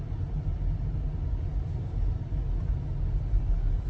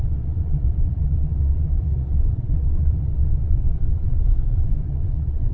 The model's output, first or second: second